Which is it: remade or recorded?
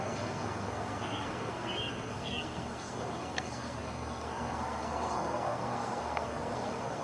remade